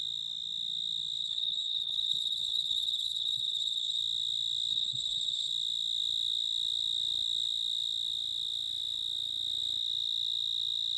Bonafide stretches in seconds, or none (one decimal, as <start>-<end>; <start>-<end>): 0.0-1.2; 4.0-4.7; 5.5-11.0